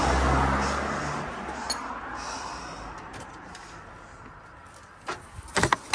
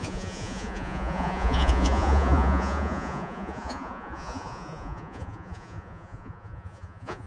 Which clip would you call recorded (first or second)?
first